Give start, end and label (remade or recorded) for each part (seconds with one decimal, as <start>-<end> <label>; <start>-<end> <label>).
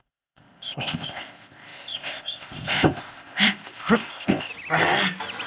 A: 0.0-4.5 remade; 4.5-5.5 recorded